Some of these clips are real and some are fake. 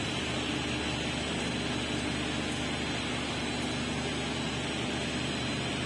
real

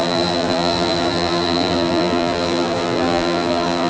fake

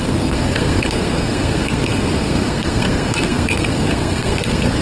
fake